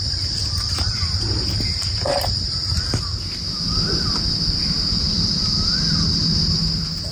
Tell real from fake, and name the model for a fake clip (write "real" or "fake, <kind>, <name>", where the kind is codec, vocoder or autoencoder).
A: real